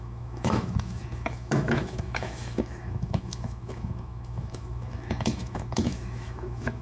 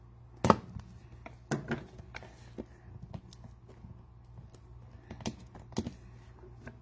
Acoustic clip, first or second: second